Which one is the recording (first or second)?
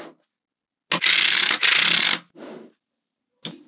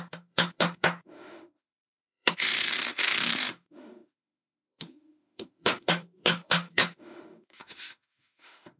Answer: first